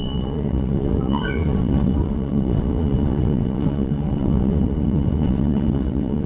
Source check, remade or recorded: remade